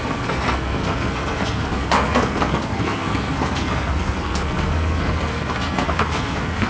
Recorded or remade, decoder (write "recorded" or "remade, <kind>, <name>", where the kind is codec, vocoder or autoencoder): remade, codec, SNAC